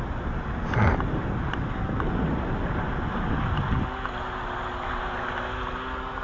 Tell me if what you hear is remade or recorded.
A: recorded